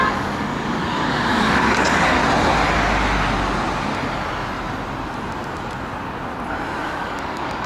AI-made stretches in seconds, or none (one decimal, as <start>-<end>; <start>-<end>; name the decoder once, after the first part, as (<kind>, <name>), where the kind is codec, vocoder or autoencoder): 0.0-2.2 (codec, DAC); 6.8-7.7